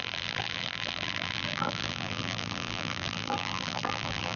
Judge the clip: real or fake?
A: fake